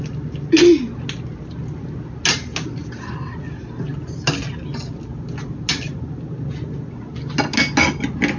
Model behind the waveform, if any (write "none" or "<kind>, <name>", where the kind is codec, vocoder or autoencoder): none